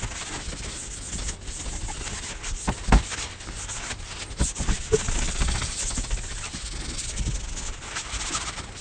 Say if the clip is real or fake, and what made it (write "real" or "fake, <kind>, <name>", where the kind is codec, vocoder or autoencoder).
real